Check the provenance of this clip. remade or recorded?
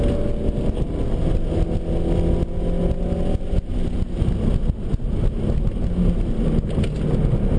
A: recorded